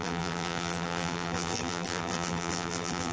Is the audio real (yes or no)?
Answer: no